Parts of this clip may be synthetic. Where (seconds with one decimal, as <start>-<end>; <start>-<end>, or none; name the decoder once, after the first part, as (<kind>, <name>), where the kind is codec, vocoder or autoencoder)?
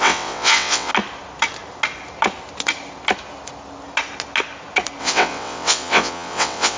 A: 0.0-0.9 (vocoder, WaveNeXt); 5.0-6.8